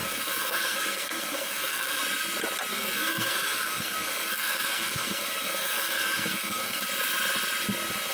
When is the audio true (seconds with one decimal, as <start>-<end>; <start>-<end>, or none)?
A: 2.0-2.7; 6.8-8.1